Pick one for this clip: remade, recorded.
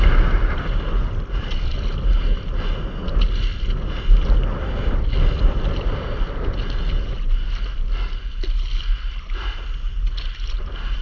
recorded